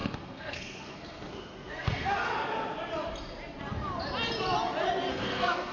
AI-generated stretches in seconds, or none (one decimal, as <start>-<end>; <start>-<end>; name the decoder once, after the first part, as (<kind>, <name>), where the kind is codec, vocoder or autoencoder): 0.0-2.3 (codec, SNAC); 5.1-5.7